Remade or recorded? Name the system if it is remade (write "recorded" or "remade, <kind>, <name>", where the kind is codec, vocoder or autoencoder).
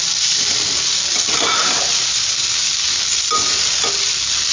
recorded